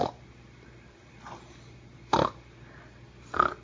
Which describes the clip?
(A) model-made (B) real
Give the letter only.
B